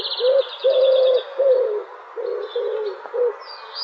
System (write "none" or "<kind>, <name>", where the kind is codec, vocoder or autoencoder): none